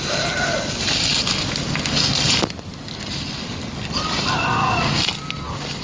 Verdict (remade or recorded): recorded